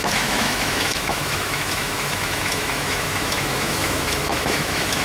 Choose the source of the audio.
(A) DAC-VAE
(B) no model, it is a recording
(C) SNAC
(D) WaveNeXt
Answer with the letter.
A